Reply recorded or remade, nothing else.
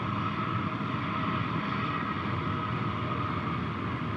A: recorded